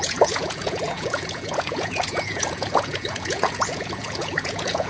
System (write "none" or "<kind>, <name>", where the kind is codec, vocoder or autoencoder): vocoder, Vocos